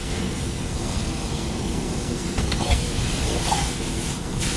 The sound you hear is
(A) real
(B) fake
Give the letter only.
B